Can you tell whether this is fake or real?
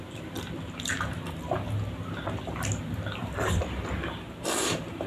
real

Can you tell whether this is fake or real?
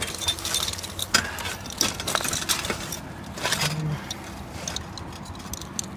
real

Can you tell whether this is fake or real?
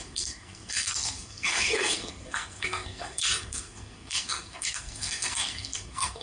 fake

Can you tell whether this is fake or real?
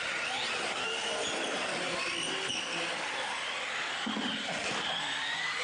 real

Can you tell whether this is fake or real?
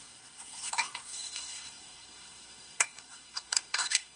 fake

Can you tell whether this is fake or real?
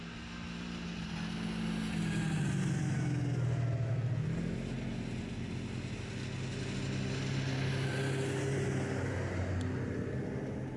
real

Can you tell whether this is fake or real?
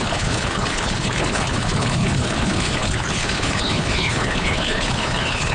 fake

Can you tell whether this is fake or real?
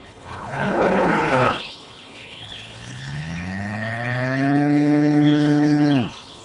fake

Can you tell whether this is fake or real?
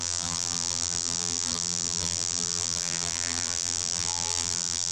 fake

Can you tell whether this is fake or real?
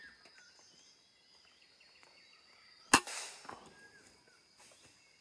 real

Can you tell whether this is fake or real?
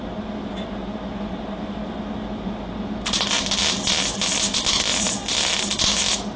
real